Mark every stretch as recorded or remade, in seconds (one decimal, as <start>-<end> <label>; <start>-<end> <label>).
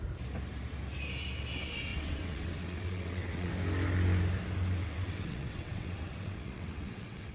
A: 0.0-1.9 recorded; 1.9-3.5 remade; 3.5-4.8 recorded; 4.8-7.3 remade